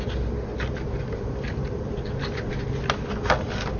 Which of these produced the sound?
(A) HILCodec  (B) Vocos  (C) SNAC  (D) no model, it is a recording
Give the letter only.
D